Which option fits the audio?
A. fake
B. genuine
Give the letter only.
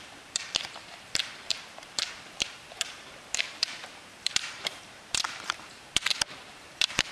A